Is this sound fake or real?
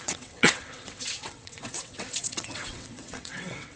fake